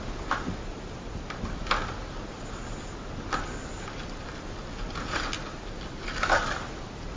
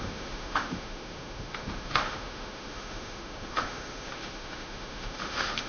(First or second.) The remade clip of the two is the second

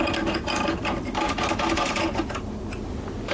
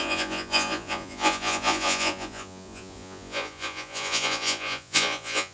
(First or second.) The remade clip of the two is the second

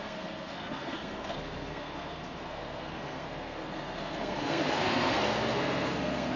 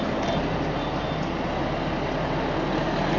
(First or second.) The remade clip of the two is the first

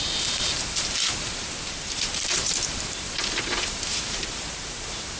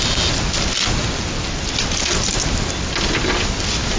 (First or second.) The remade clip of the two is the first